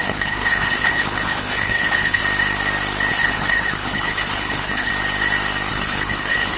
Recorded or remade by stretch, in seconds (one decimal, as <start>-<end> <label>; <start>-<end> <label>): 0.0-2.2 remade; 2.2-3.1 recorded; 3.1-4.9 remade; 4.9-5.7 recorded; 5.7-6.6 remade